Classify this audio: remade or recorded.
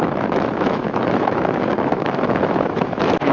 remade